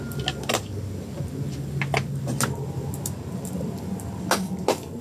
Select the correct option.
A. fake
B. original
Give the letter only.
B